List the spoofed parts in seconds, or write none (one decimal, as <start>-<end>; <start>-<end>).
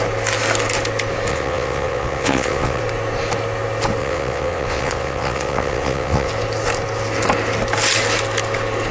1.3-2.8; 4.0-6.3